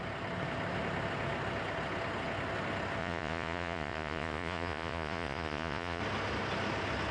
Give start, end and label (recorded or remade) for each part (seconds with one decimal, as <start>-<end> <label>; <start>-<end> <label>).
0.0-3.0 recorded; 3.0-6.0 remade; 6.0-7.1 recorded